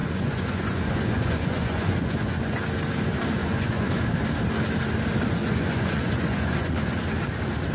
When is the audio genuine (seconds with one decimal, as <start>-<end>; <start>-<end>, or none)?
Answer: 2.6-3.4; 4.0-5.4; 6.8-7.7